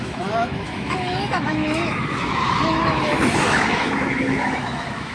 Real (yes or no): no